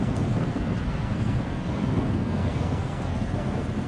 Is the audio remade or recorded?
remade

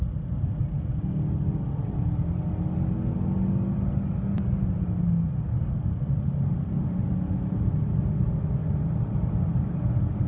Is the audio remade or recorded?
recorded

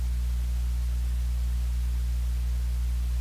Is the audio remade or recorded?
recorded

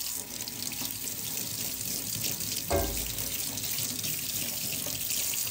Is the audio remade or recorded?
recorded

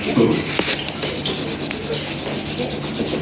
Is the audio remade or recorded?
recorded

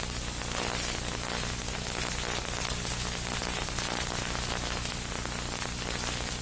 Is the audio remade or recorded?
recorded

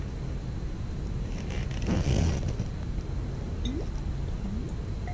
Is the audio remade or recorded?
recorded